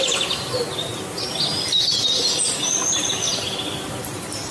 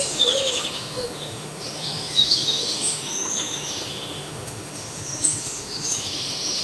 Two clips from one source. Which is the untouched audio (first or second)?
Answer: first